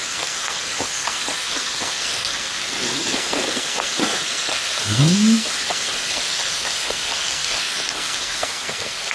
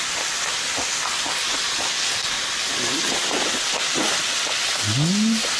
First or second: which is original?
second